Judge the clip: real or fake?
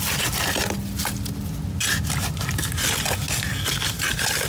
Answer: real